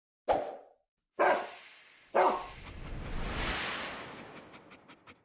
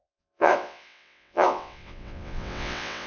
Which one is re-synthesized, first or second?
second